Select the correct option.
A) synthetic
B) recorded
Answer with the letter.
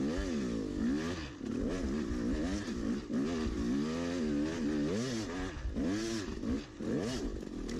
B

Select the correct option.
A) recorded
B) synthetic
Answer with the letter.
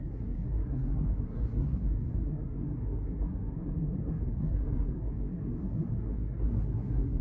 B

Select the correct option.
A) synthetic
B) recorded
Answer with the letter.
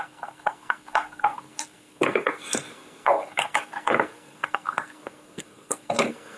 A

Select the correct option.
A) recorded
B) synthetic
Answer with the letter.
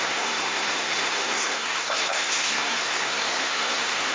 B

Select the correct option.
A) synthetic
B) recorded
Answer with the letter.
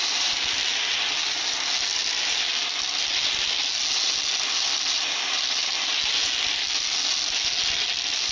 B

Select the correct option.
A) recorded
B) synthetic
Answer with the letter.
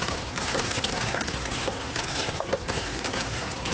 B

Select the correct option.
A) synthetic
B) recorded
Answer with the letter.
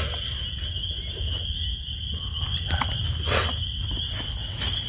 B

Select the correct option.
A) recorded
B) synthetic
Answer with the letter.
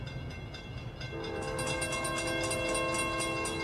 A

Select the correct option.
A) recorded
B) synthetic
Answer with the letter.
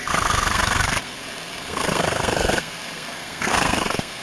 B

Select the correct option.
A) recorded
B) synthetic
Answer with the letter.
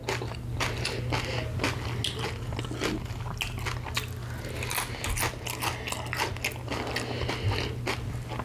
A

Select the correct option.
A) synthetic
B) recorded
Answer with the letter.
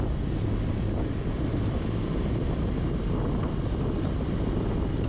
B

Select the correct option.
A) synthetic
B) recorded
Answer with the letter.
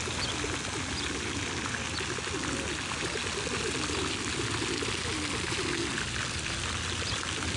B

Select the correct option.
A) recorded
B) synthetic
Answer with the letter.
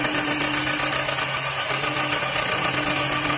A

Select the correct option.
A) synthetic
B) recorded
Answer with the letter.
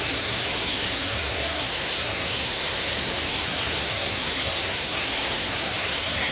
A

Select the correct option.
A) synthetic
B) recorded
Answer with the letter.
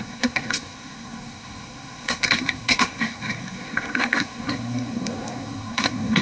A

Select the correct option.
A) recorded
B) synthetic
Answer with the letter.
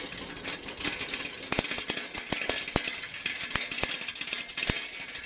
A